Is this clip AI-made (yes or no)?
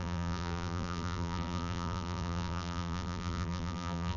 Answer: yes